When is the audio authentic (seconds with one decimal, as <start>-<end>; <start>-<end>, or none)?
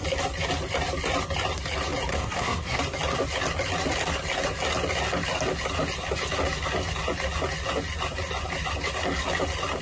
0.0-2.1; 2.8-9.8